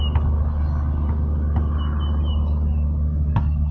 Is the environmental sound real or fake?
real